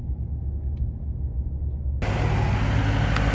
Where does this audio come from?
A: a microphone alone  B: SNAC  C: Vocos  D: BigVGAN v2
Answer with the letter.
A